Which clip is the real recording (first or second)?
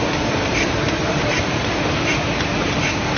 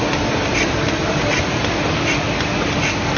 second